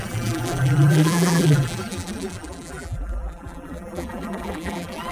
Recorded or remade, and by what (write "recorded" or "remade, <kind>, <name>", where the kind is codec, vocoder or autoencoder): remade, vocoder, BigVGAN v2